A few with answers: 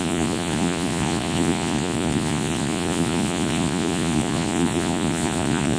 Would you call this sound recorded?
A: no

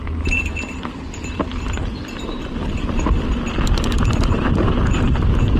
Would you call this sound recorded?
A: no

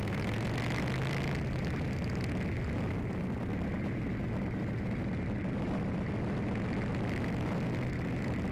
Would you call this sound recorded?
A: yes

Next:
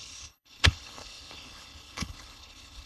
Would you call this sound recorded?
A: no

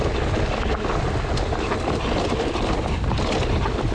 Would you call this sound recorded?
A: yes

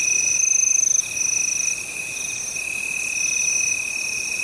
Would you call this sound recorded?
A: yes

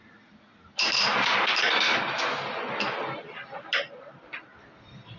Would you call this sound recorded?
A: yes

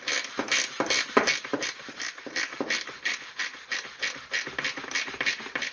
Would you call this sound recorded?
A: yes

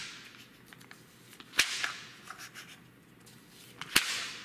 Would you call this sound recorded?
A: yes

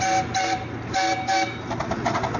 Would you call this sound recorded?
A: yes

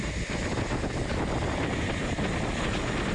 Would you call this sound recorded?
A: yes